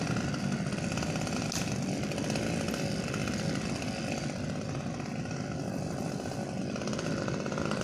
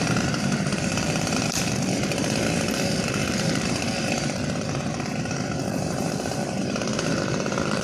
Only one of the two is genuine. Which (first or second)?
first